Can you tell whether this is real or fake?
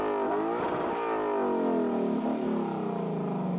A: real